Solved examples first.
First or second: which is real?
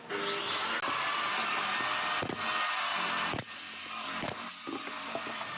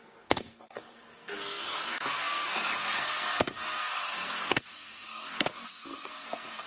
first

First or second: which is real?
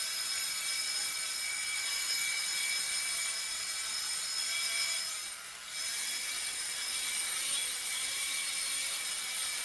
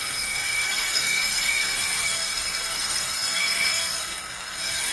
first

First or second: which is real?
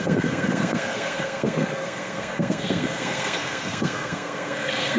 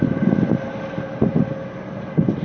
second